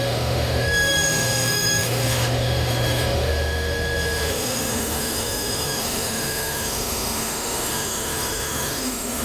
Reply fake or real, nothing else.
fake